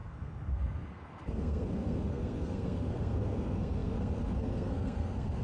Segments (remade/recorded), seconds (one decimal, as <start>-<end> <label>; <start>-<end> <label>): 0.0-5.4 remade